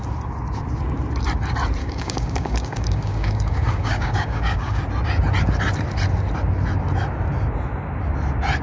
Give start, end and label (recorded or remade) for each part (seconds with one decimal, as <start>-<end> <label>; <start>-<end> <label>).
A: 0.0-1.8 recorded; 1.8-4.8 remade; 4.8-8.6 recorded